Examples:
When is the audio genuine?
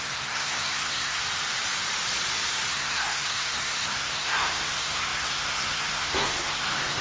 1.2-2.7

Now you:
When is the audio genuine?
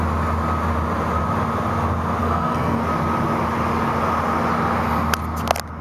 0.0-2.2; 2.8-5.8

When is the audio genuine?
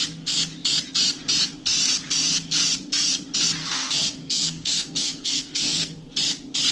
0.0-3.6; 6.1-6.7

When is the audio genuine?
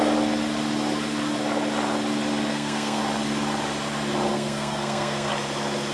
0.0-2.5; 3.0-4.3; 5.3-5.9